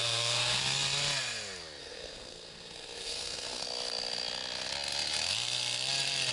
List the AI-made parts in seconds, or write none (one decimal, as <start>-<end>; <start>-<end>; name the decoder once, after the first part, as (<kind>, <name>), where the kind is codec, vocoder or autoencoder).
0.0-0.6 (codec, SNAC); 1.8-3.6